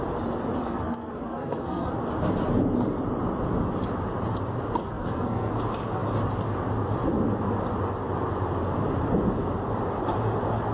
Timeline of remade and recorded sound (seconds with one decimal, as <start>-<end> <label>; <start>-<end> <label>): 0.0-0.6 recorded; 0.6-1.9 remade; 1.9-4.8 recorded; 4.8-5.5 remade; 5.5-10.7 recorded